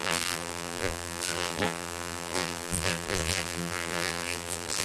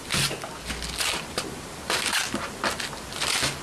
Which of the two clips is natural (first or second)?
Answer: second